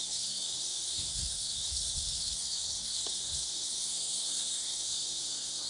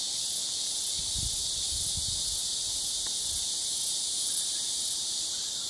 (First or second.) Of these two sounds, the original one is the second